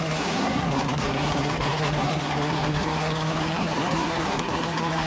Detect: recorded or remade remade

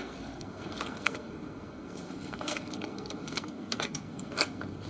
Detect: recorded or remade remade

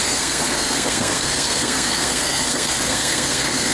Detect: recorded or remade remade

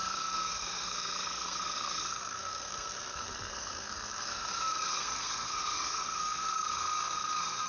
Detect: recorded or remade remade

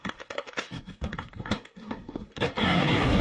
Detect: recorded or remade remade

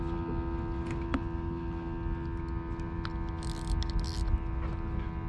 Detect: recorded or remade recorded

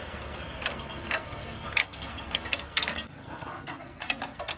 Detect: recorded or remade remade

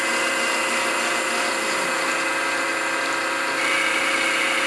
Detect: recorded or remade recorded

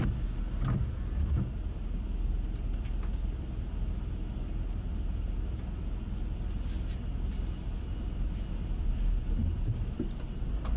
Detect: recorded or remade recorded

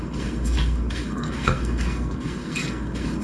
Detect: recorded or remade remade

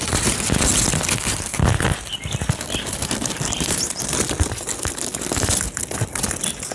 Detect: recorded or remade recorded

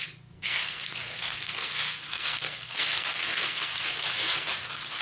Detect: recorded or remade remade